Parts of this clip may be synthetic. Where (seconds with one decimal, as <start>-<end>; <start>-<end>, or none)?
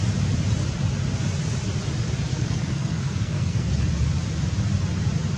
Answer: 2.3-3.7